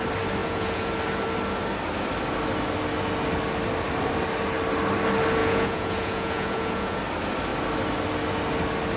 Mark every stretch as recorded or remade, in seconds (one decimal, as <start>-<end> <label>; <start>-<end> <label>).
0.0-0.4 recorded; 0.4-0.9 remade; 0.9-5.4 recorded; 5.4-7.0 remade; 7.0-9.0 recorded

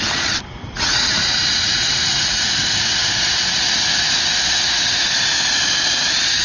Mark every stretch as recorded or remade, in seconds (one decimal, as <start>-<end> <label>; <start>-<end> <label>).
0.0-0.6 recorded; 0.6-2.5 remade; 2.5-6.4 recorded

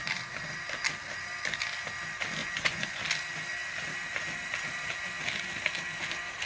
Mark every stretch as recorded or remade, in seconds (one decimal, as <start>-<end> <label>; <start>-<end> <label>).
0.0-2.4 recorded; 2.4-3.0 remade; 3.0-6.5 recorded